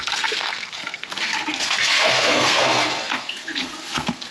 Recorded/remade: remade